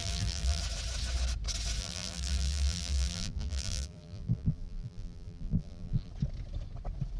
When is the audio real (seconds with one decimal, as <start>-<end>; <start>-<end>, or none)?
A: 0.6-1.8; 6.1-7.2